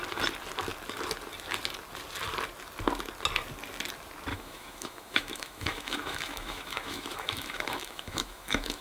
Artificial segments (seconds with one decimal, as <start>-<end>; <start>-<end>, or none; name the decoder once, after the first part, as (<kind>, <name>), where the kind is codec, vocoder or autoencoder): 4.3-8.8 (autoencoder, DAC-VAE)